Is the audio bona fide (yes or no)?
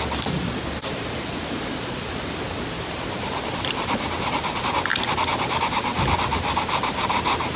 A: yes